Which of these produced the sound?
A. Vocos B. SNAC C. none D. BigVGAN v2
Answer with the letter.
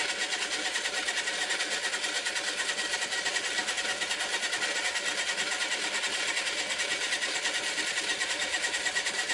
C